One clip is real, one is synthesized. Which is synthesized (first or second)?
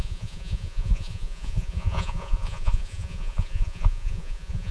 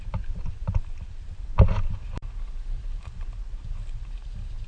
first